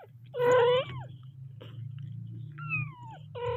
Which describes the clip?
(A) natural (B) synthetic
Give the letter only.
A